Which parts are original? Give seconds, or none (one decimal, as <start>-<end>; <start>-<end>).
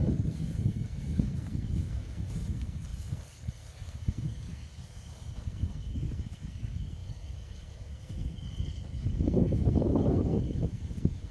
none